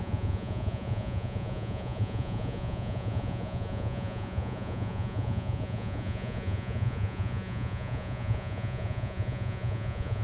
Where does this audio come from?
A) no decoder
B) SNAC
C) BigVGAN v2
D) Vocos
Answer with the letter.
D